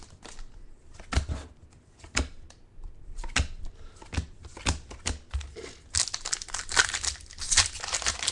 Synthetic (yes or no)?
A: no